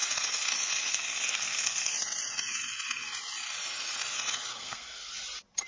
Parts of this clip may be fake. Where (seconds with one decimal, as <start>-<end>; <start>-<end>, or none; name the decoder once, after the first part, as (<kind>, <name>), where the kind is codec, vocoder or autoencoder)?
0.9-1.9 (codec, SNAC); 4.5-5.1

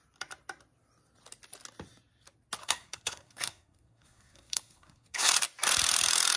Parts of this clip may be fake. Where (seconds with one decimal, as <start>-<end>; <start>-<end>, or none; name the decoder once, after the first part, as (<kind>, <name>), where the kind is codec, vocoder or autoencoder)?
2.6-5.3 (codec, SNAC)